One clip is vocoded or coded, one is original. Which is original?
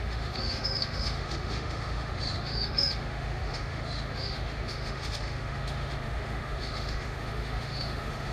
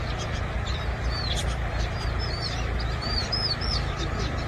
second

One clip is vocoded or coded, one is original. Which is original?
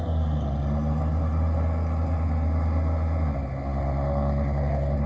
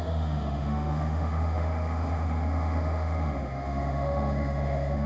first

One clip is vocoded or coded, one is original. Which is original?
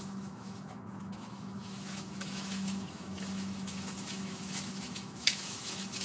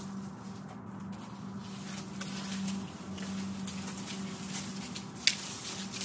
second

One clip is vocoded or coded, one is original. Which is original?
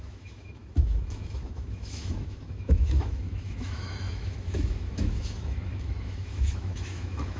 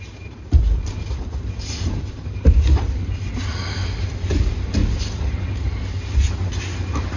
second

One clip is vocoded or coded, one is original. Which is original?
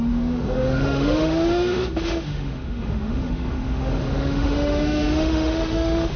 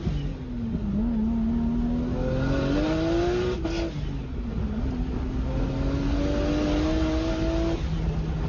second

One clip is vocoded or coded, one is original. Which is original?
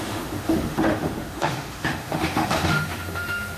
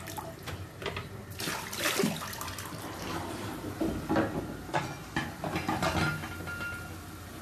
second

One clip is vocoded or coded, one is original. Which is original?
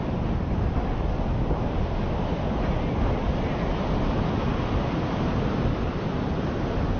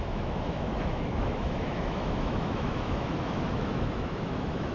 first